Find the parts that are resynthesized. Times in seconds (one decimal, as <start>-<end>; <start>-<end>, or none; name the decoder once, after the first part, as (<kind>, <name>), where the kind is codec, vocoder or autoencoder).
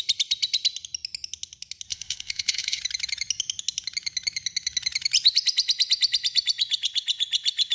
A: 1.9-2.8 (codec, ZipCodec)